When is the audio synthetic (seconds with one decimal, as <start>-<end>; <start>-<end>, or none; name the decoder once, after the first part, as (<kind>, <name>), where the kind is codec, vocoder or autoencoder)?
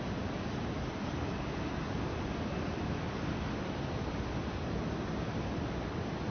none